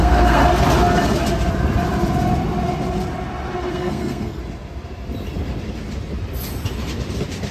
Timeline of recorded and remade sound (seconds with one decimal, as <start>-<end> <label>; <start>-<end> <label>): 0.0-0.4 remade; 0.4-3.7 recorded; 3.7-4.4 remade; 4.4-7.5 recorded